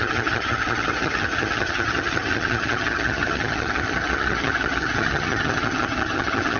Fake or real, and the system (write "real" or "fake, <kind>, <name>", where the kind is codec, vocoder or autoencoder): fake, vocoder, HiFi-GAN